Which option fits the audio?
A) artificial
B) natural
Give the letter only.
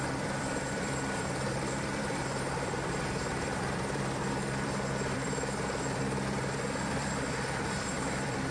A